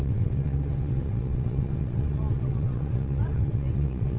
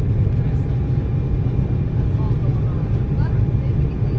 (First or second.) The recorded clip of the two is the second